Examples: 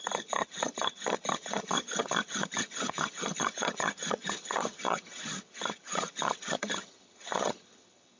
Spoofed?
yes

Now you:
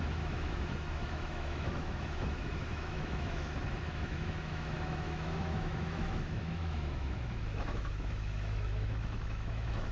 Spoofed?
yes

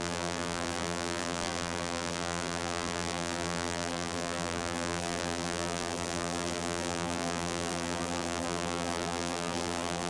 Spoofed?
yes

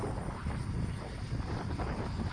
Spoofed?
no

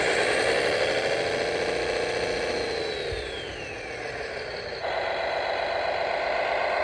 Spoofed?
no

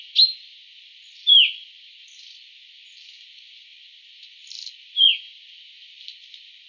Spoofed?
no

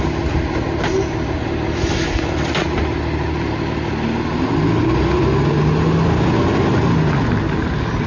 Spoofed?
no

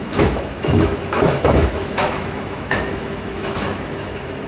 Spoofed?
yes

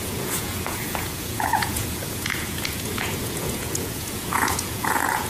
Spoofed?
yes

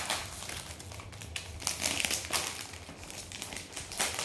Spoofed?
no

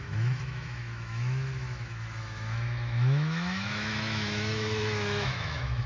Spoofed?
yes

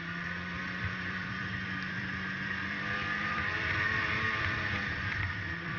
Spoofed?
yes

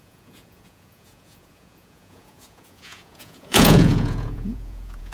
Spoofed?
yes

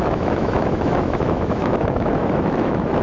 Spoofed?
yes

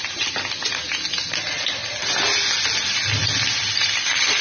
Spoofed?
no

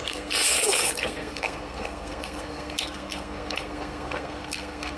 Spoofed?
yes